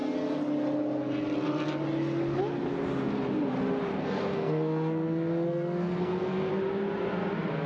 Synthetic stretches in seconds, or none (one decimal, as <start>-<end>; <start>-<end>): 3.9-6.5